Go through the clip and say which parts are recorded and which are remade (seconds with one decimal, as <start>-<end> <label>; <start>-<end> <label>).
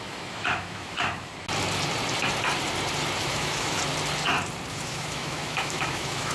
0.0-1.3 remade; 1.3-3.3 recorded; 3.3-3.8 remade; 3.8-4.7 recorded; 4.7-6.3 remade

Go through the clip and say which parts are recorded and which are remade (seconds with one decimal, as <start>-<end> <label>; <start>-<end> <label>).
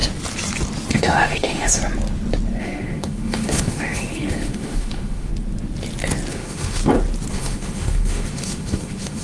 0.0-0.9 recorded; 0.9-1.8 remade; 1.8-2.6 recorded; 2.6-5.3 remade; 5.3-6.3 recorded; 6.3-6.8 remade; 6.8-7.3 recorded; 7.3-9.2 remade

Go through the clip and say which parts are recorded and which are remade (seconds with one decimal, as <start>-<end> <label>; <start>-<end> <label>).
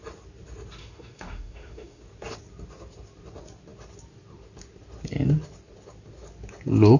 0.0-0.8 recorded; 0.8-2.0 remade; 2.0-7.0 recorded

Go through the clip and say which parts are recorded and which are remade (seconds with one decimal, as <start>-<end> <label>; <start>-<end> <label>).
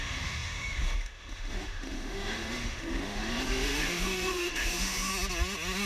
0.0-5.1 remade; 5.1-5.9 recorded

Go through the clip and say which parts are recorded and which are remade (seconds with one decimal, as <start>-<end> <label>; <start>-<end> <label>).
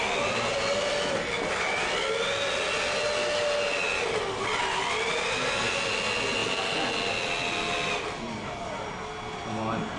0.0-10.0 recorded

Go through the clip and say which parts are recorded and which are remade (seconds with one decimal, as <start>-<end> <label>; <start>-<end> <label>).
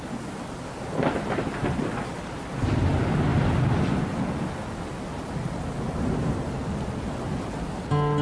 0.0-8.2 recorded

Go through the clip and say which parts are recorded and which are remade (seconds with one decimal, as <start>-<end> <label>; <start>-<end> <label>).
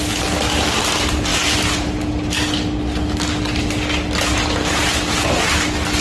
0.0-6.0 recorded